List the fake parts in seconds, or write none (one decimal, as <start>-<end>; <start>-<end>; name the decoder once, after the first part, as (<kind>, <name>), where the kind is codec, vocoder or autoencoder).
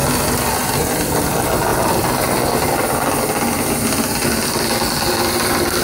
none